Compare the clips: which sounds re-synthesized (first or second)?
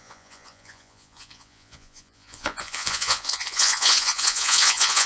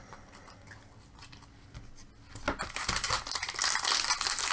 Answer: first